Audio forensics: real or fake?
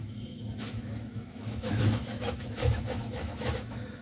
fake